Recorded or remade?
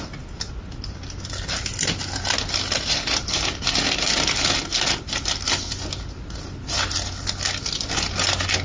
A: recorded